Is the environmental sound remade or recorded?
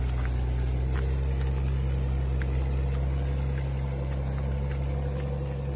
recorded